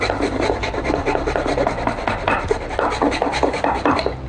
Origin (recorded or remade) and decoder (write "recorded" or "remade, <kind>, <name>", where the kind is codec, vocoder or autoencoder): recorded